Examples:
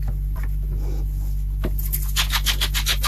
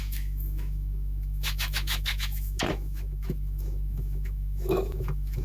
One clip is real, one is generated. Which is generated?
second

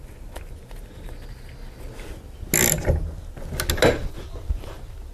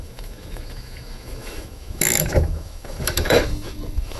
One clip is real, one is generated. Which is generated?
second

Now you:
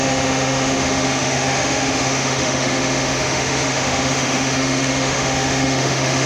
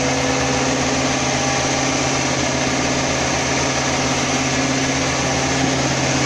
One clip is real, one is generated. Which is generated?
first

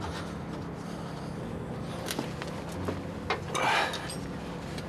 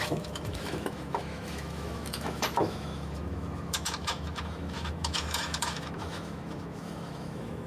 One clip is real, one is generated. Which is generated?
second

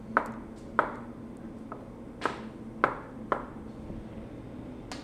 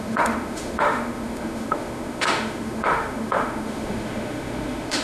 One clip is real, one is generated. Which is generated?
second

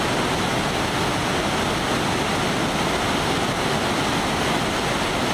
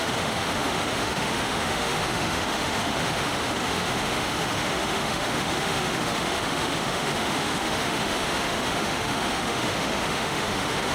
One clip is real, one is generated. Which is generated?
second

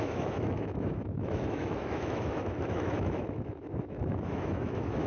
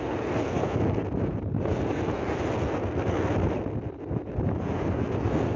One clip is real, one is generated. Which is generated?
first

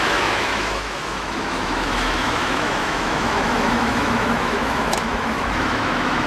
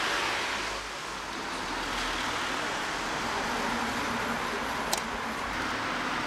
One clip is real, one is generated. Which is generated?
first